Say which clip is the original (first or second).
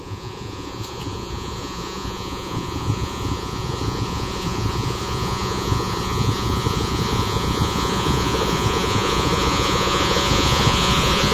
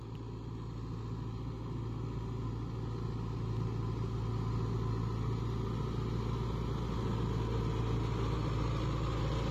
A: second